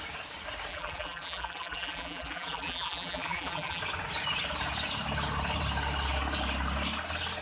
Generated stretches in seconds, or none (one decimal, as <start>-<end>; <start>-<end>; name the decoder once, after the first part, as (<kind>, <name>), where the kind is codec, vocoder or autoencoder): 0.7-3.8 (vocoder, BigVGAN v2)